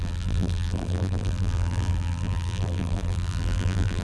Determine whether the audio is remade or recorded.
remade